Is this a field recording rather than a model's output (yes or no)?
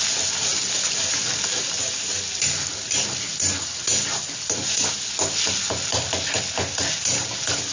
yes